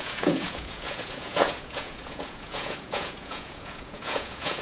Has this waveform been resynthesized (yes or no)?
yes